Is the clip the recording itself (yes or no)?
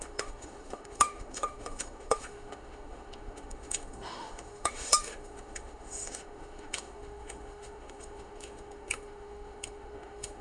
no